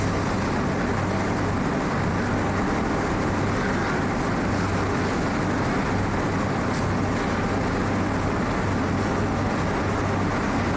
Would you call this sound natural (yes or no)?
yes